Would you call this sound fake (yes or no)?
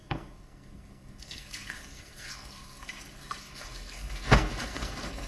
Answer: yes